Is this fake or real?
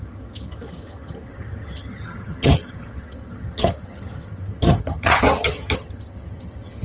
fake